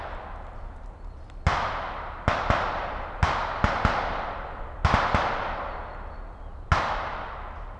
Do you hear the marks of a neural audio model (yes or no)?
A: no